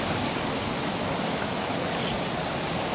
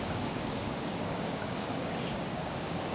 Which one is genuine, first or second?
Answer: first